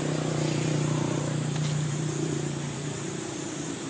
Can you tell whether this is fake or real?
fake